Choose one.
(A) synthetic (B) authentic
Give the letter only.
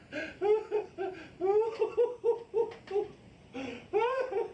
B